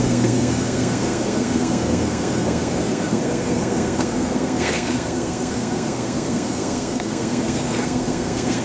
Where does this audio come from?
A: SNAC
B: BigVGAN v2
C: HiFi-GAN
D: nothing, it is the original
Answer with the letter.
A